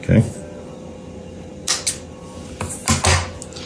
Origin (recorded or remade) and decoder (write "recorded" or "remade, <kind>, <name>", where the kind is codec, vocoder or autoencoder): recorded